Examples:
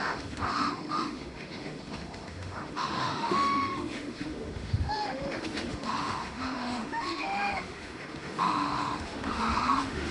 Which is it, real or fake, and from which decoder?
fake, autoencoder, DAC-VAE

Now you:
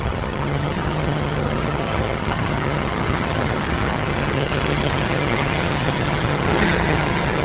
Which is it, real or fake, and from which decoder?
fake, vocoder, HiFi-GAN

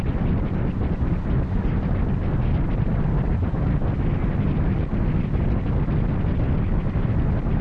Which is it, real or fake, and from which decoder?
real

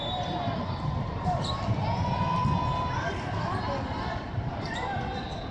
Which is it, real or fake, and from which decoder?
fake, vocoder, BigVGAN v2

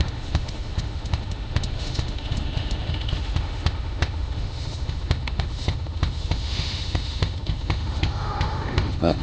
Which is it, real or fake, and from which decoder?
fake, autoencoder, DAC-VAE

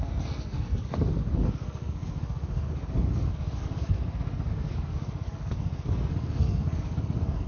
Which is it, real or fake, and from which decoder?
fake, codec, SNAC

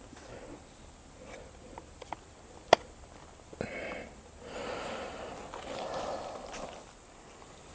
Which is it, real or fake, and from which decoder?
real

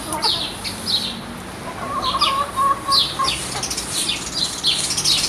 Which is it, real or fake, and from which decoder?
real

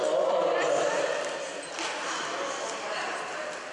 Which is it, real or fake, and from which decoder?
real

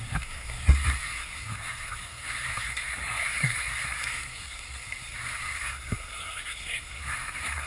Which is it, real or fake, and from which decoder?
fake, codec, SNAC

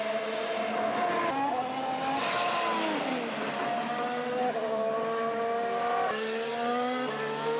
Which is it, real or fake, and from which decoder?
real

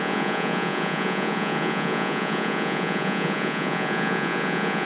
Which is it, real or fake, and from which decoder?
fake, vocoder, Vocos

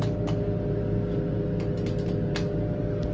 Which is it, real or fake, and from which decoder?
real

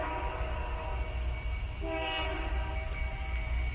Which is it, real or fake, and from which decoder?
real